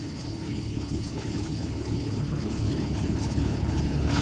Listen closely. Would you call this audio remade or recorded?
remade